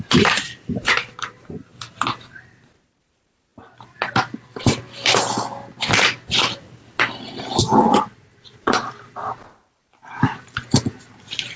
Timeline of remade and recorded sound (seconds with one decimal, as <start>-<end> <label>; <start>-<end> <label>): 0.0-1.7 remade; 1.7-2.3 recorded; 2.3-3.5 remade; 3.5-8.0 recorded; 8.0-11.6 remade